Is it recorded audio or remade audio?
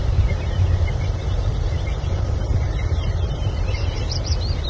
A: remade